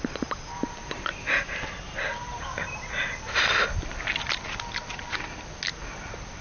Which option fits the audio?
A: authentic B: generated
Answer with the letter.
A